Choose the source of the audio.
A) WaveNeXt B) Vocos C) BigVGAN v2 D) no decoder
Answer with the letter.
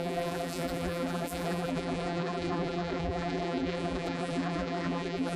C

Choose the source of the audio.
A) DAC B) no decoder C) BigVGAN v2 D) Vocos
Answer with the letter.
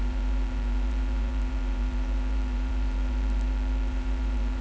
C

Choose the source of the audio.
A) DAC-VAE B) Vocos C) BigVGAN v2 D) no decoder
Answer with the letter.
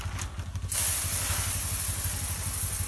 D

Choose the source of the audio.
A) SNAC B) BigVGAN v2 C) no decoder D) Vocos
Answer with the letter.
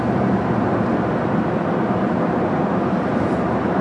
B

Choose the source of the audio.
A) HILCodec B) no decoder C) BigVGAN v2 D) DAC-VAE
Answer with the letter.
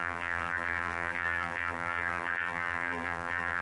C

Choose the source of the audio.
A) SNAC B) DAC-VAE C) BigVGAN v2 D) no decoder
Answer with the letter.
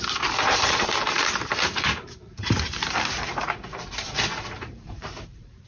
C